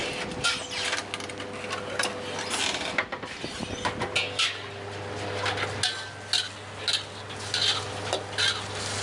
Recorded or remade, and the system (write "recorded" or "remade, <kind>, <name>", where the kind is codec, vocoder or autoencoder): recorded